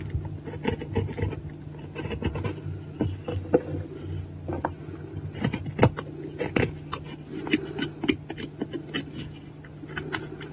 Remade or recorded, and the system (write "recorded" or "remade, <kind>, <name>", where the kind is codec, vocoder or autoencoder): recorded